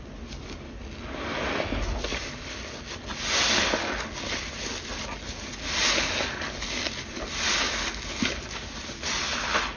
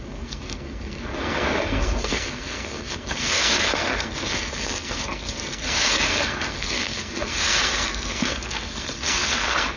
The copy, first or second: second